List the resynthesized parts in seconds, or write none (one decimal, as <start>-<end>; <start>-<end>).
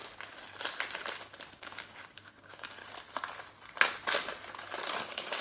1.6-2.8; 5.0-5.4